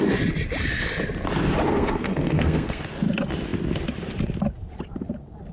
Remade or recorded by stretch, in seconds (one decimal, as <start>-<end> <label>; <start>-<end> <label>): 0.0-1.7 recorded; 1.7-2.8 remade; 2.8-5.5 recorded